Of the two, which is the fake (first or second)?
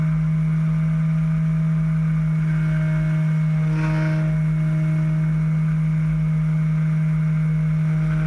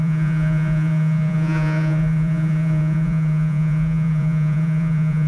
second